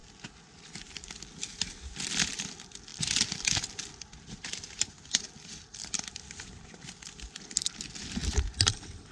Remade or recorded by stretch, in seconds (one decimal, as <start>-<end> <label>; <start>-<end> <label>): 0.0-0.8 recorded; 0.8-9.1 remade